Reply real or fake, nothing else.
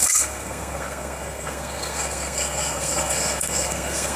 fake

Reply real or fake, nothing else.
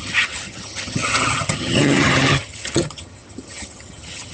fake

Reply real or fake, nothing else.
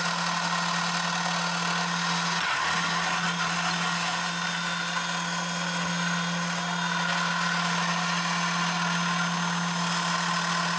real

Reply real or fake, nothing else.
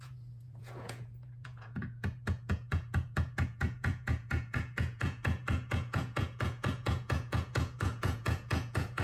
fake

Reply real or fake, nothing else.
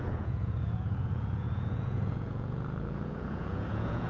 fake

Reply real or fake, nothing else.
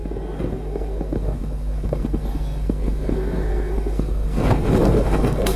fake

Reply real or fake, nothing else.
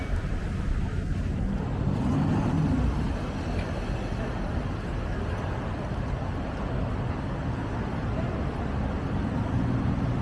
real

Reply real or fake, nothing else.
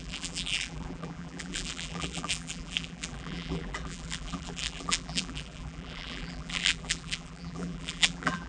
fake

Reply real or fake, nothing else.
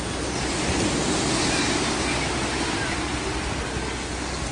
real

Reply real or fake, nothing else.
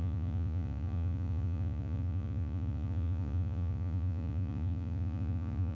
fake